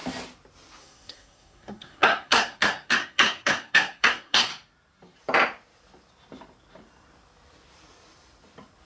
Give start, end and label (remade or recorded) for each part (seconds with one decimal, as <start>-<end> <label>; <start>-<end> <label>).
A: 0.0-0.8 recorded; 0.8-4.5 remade; 4.5-8.9 recorded